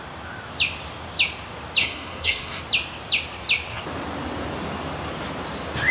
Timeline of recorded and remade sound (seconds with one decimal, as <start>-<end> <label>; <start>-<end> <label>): 0.0-1.8 recorded; 1.8-2.6 remade; 2.6-5.9 recorded